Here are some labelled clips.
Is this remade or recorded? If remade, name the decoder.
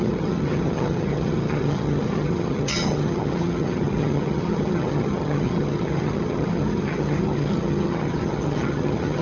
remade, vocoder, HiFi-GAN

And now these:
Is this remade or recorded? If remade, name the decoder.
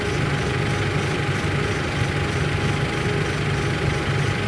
recorded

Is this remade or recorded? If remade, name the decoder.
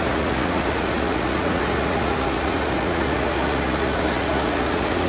remade, vocoder, Vocos